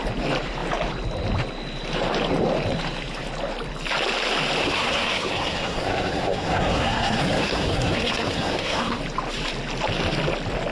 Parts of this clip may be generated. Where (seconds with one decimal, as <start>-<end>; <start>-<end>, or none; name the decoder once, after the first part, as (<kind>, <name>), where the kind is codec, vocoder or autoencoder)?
4.6-9.0 (codec, SNAC)